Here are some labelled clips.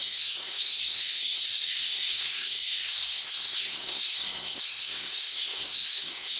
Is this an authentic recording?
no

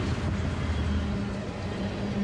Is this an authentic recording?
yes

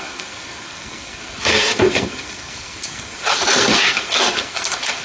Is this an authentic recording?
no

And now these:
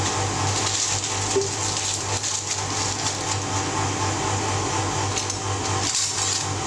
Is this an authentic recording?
yes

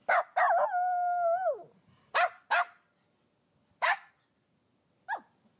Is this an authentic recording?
yes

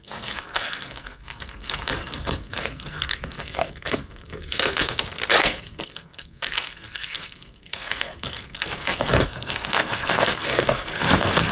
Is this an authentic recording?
no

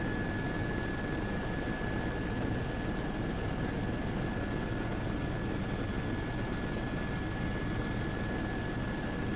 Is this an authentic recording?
yes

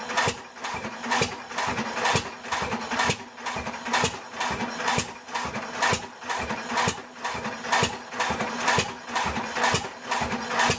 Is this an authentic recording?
yes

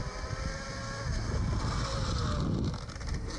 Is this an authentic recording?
yes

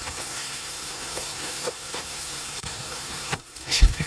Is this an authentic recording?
no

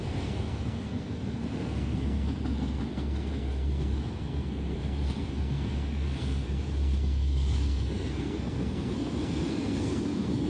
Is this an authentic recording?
no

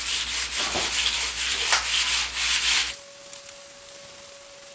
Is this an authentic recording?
yes